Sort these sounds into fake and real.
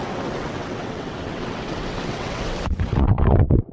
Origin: fake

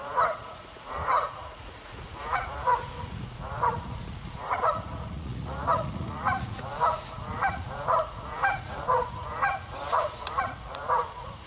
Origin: fake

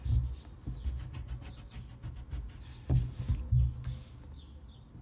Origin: real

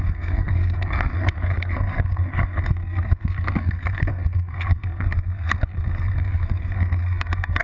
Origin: fake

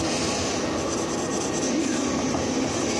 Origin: real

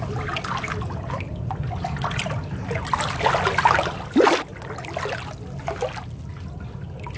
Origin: real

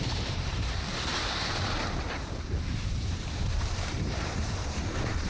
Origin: fake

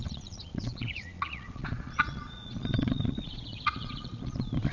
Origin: fake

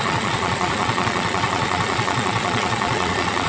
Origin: fake